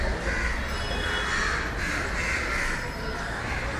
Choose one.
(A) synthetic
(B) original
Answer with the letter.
B